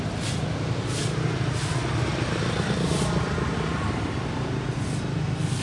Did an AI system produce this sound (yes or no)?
no